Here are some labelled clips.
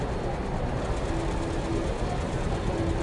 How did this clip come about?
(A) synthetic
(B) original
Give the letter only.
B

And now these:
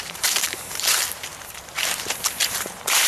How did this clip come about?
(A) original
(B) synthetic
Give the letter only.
B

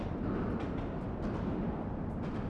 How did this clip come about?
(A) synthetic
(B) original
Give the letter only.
A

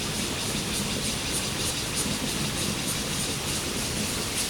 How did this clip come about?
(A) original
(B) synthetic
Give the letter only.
A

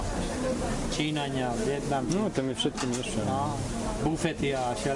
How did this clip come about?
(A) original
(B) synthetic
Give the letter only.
A